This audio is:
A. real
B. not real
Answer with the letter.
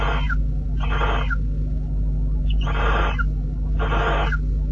A